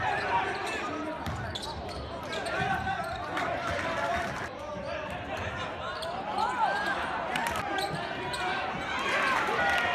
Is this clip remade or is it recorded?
recorded